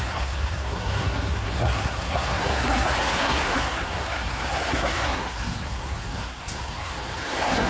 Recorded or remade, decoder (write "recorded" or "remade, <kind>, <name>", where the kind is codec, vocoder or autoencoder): remade, codec, SNAC